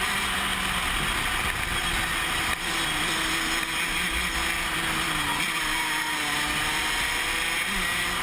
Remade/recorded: recorded